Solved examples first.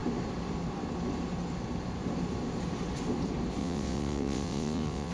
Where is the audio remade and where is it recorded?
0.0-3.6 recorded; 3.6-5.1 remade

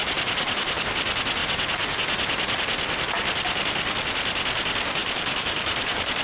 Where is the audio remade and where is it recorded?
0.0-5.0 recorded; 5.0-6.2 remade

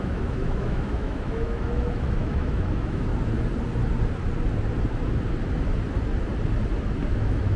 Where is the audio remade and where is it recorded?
0.0-3.1 remade; 3.1-7.1 recorded; 7.1-7.6 remade

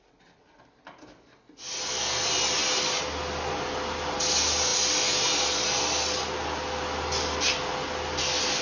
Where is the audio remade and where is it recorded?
0.0-8.6 recorded

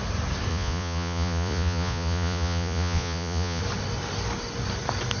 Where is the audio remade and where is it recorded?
0.0-0.5 recorded; 0.5-3.6 remade; 3.6-5.2 recorded

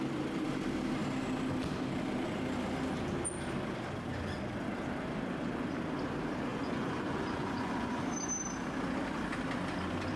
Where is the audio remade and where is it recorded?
0.0-6.5 recorded; 6.5-8.0 remade; 8.0-10.2 recorded

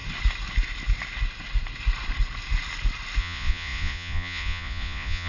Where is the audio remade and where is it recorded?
0.0-3.2 recorded; 3.2-5.3 remade